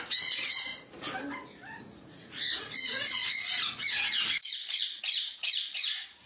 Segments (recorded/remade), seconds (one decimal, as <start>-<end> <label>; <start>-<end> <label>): 0.0-0.7 remade; 0.7-1.8 recorded; 1.8-6.3 remade